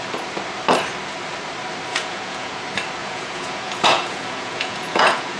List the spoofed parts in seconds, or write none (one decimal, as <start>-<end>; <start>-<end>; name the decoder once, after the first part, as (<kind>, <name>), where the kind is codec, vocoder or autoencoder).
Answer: 1.9-2.6 (vocoder, Vocos); 3.0-5.4